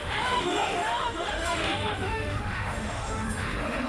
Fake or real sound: fake